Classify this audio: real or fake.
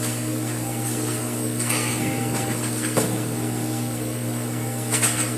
fake